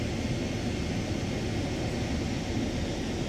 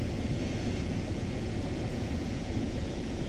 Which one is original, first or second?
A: first